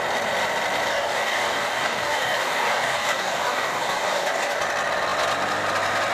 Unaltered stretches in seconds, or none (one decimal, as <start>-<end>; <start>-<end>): 0.0-0.9; 4.6-6.1